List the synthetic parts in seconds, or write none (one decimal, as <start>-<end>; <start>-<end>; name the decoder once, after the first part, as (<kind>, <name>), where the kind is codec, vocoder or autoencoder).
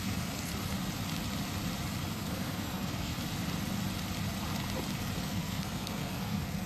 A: 0.0-0.5 (codec, SNAC); 2.1-3.1; 5.2-6.7